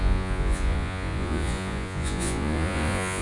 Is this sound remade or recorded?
remade